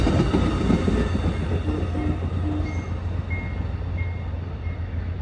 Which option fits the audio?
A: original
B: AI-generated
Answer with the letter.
A